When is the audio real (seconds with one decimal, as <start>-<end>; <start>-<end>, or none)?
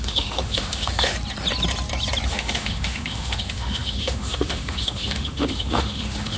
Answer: 1.1-2.3